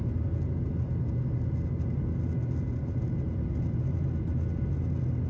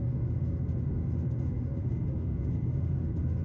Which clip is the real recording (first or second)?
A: first